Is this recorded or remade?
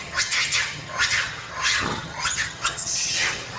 remade